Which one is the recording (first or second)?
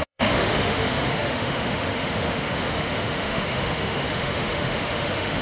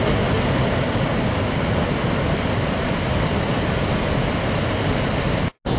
second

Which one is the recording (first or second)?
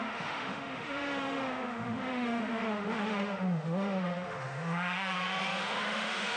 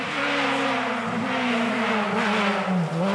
second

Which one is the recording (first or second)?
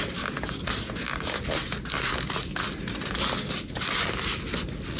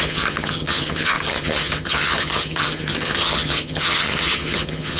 first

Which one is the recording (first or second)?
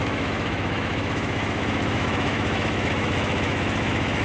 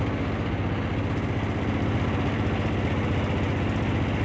second